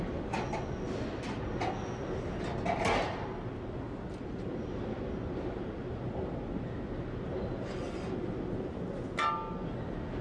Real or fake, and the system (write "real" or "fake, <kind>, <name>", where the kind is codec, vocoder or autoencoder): real